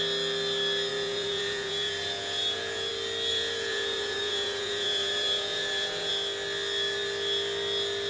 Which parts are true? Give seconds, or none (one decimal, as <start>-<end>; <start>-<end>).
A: 0.0-0.9; 2.9-3.3; 6.1-8.1